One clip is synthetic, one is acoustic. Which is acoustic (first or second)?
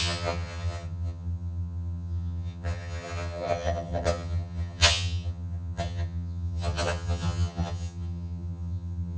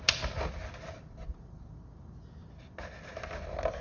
second